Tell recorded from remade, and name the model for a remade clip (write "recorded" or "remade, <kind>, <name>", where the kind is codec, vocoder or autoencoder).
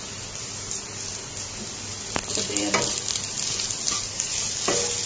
recorded